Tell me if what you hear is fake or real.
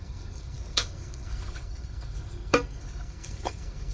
fake